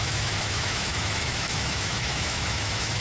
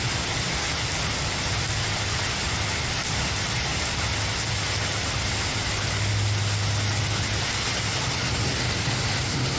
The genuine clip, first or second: second